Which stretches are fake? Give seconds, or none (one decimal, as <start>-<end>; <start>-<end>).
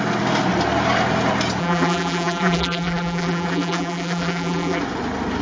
1.6-4.8